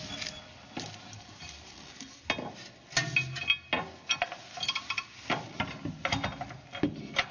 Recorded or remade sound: recorded